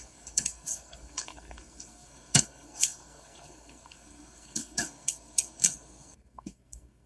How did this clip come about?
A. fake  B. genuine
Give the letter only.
A